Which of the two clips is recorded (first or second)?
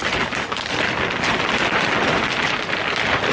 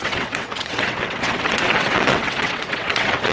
first